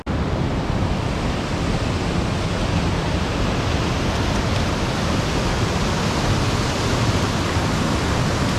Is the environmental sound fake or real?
real